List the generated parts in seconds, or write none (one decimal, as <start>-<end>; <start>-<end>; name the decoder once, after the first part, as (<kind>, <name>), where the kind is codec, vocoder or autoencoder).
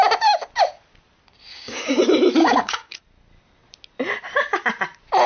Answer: 1.5-2.0 (codec, DAC); 2.4-3.0